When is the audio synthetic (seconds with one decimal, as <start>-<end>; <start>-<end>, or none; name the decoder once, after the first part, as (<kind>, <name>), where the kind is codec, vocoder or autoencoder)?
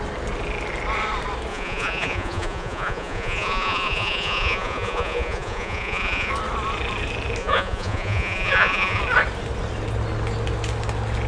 1.5-6.3 (vocoder, Vocos); 7.4-9.0